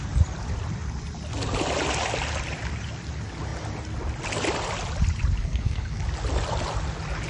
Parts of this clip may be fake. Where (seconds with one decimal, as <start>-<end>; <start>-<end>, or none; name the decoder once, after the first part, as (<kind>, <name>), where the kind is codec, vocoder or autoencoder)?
5.4-6.0 (codec, SNAC)